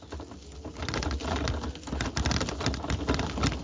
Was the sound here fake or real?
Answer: real